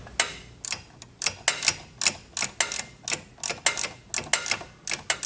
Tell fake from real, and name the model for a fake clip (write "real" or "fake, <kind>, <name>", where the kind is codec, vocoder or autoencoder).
real